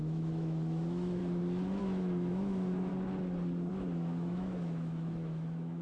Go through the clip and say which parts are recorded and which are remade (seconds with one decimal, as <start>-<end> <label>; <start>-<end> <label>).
0.0-1.2 remade; 1.2-1.8 recorded; 1.8-2.9 remade; 2.9-3.7 recorded; 3.7-5.8 remade